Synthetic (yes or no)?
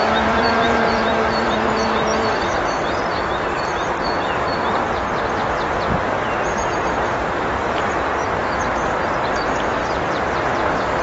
yes